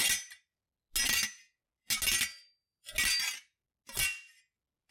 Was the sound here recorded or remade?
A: recorded